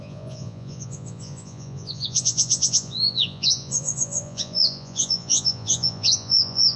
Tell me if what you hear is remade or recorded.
remade